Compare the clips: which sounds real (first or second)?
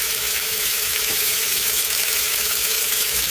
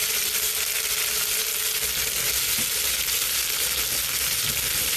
second